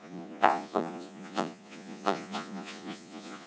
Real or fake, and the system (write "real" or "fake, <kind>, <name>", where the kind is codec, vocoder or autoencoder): fake, vocoder, Vocos